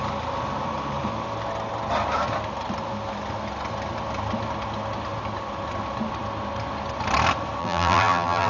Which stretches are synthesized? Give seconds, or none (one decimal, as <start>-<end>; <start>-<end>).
7.6-8.5